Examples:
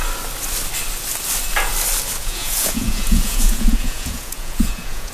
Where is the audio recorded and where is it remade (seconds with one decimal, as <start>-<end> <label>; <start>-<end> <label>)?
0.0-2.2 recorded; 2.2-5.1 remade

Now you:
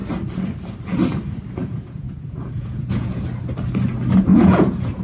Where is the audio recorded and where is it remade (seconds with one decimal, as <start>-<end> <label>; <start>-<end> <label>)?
0.0-1.6 recorded; 1.6-3.2 remade; 3.2-4.3 recorded; 4.3-5.0 remade

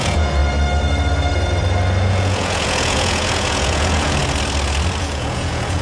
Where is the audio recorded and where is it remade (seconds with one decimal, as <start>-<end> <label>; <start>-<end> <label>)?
0.0-0.4 remade; 0.4-2.1 recorded; 2.1-4.2 remade; 4.2-5.0 recorded; 5.0-5.8 remade

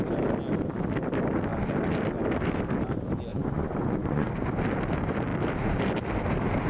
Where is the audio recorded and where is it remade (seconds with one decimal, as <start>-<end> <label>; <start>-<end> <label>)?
0.0-3.3 recorded; 3.3-4.3 remade; 4.3-6.7 recorded

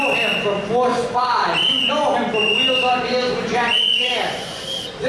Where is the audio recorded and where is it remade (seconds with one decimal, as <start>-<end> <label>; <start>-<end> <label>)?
0.0-0.9 recorded; 0.9-1.9 remade; 1.9-3.7 recorded; 3.7-4.6 remade; 4.6-5.1 recorded